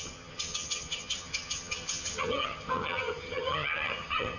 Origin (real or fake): fake